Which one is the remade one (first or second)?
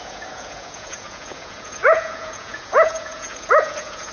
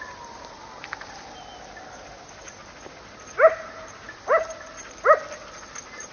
first